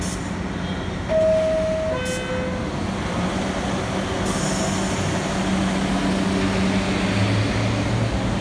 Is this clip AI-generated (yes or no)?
no